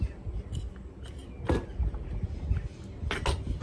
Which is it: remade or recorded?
recorded